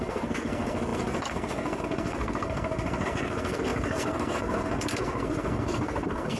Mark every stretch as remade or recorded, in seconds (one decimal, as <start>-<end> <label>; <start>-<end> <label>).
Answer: 0.0-6.4 remade